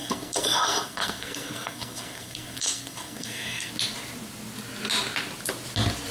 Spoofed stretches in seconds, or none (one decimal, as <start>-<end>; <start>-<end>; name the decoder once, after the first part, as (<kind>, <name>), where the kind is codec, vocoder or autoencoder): 0.0-3.7 (codec, SNAC)